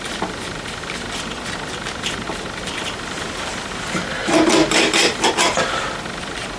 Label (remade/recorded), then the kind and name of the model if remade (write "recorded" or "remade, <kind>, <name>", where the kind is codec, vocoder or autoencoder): remade, vocoder, BigVGAN v2